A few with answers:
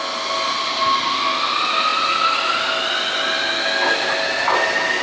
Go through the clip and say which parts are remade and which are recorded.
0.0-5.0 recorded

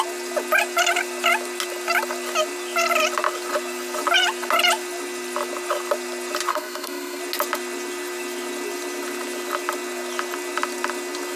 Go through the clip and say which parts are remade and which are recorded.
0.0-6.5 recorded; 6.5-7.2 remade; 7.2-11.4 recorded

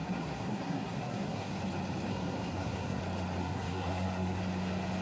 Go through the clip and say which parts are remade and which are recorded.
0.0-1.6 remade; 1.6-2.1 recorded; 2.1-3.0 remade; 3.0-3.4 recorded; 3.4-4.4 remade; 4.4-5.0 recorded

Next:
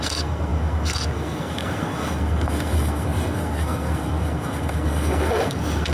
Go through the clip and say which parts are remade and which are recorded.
0.0-5.9 remade